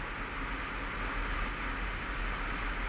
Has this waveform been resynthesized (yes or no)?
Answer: no